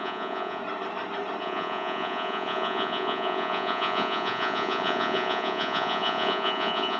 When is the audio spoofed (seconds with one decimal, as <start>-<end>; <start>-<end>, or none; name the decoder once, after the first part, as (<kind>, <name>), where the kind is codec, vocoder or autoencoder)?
0.0-0.6 (vocoder, Vocos); 1.4-7.0